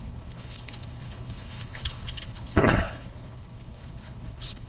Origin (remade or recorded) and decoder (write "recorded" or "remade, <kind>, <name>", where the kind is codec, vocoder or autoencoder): remade, codec, HILCodec